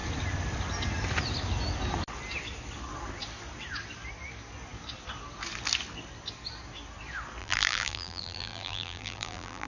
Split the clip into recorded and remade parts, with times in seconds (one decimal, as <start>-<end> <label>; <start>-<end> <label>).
0.0-7.4 recorded; 7.4-9.7 remade